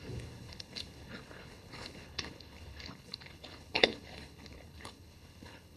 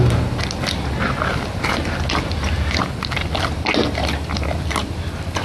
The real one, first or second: second